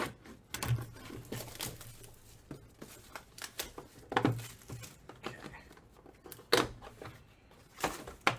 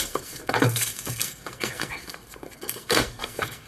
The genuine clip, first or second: first